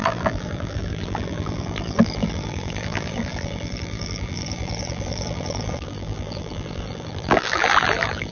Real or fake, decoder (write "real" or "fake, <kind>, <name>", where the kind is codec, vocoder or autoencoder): fake, vocoder, BigVGAN v2